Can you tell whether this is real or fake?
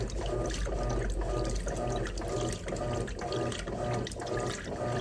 real